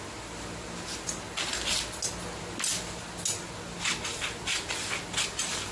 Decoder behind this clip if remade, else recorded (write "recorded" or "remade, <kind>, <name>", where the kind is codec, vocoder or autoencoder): recorded